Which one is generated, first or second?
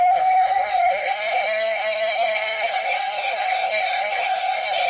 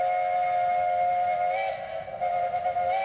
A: first